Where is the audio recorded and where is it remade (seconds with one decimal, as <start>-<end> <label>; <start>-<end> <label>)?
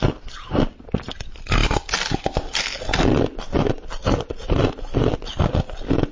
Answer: 0.0-6.1 recorded